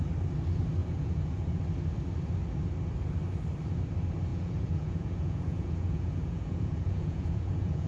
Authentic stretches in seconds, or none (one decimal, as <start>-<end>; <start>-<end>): 0.0-0.8; 1.6-4.3